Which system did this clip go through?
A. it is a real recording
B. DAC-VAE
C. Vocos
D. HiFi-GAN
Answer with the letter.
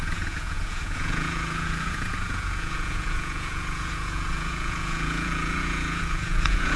C